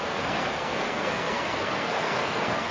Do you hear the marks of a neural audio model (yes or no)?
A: yes